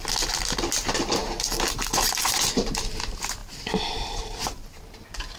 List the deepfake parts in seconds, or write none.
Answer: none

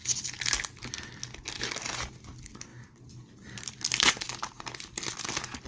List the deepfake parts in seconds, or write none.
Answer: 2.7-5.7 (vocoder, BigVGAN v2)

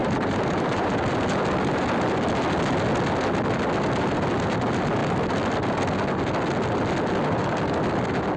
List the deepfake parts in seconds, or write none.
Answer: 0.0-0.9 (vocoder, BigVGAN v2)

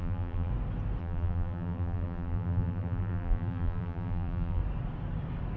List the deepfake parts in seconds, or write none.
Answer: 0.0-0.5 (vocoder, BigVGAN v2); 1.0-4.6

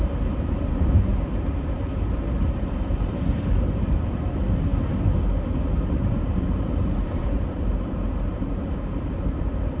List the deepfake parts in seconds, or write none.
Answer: 0.0-1.1 (vocoder, BigVGAN v2); 1.8-4.7; 5.8-9.8

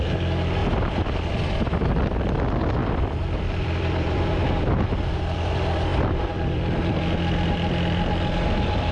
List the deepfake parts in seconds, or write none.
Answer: 2.8-4.3 (vocoder, BigVGAN v2); 5.9-6.5

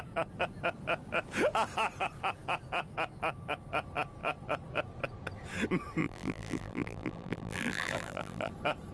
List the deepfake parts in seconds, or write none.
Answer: 6.0-8.5 (vocoder, BigVGAN v2)

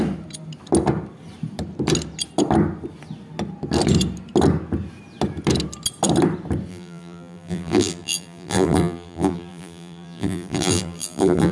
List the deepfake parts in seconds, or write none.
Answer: 6.7-11.5 (vocoder, BigVGAN v2)